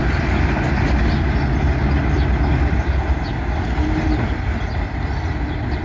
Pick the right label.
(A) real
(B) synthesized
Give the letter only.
A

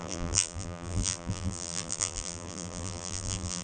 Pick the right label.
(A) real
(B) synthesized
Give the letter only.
B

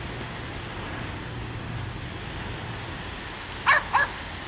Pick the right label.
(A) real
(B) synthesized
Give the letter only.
A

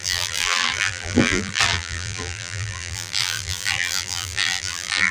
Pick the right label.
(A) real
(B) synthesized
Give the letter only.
B